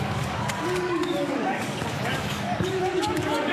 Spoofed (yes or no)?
yes